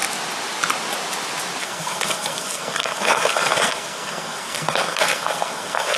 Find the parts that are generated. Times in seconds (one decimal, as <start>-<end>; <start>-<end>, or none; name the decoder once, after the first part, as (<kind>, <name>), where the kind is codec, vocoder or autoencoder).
1.6-6.0 (codec, SNAC)